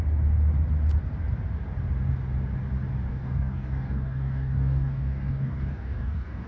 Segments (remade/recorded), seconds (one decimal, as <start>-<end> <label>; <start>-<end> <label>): 0.0-3.1 recorded; 3.1-6.5 remade